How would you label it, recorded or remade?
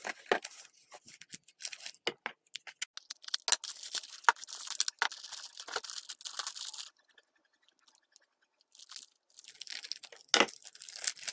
recorded